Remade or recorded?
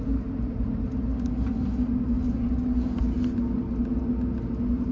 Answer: recorded